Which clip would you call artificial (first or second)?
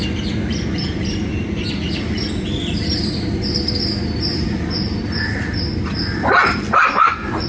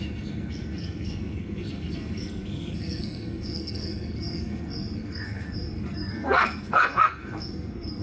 second